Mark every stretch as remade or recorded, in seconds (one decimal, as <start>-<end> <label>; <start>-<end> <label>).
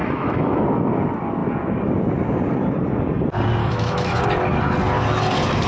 0.0-0.6 remade; 0.6-3.6 recorded; 3.6-4.2 remade; 4.2-5.7 recorded